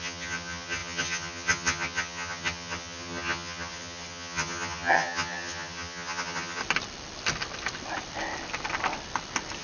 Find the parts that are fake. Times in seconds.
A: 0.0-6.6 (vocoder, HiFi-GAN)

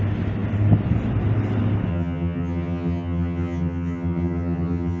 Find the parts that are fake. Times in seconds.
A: 1.9-5.0 (vocoder, HiFi-GAN)

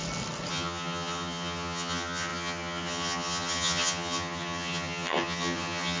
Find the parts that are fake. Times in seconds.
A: 0.5-6.0 (vocoder, HiFi-GAN)

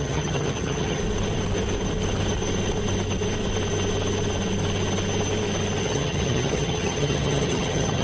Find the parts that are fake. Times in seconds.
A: 0.0-1.0 (vocoder, HiFi-GAN); 5.8-8.0